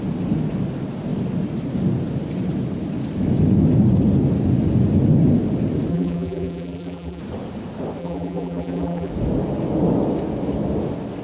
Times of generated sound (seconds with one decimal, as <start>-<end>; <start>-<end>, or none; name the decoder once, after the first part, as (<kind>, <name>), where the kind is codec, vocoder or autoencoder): 5.9-7.2 (vocoder, BigVGAN v2); 8.0-9.1